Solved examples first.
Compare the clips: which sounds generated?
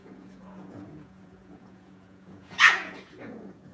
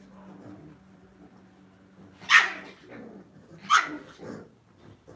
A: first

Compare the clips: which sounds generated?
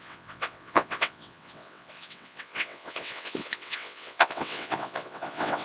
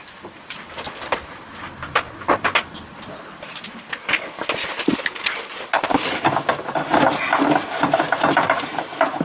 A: first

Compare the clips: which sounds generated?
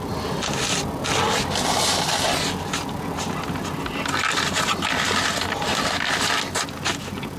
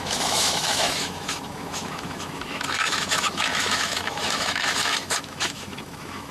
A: second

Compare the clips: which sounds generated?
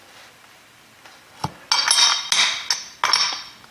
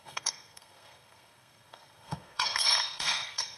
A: second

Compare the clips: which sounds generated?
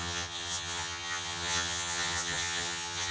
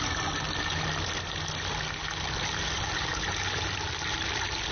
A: first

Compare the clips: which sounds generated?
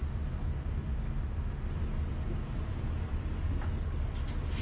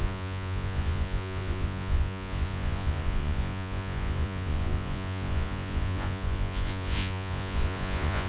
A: second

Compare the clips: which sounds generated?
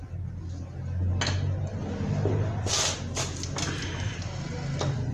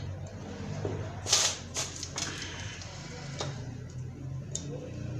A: second